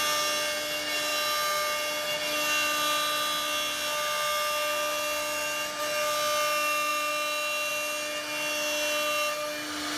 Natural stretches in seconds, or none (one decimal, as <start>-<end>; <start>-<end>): 0.0-10.0